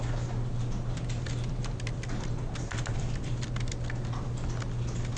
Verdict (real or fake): real